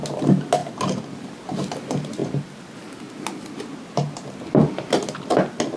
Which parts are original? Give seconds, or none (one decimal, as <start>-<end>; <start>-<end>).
0.0-5.8